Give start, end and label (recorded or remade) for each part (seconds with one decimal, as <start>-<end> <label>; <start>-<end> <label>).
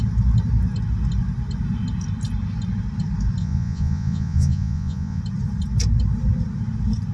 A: 0.0-3.4 recorded; 3.4-5.2 remade; 5.2-7.1 recorded